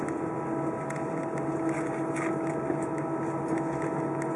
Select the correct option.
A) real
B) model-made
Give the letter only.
A